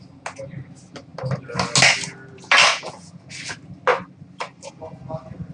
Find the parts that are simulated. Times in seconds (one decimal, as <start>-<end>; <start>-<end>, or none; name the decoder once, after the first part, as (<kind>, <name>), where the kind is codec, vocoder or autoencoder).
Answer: 2.7-3.3 (vocoder, Vocos)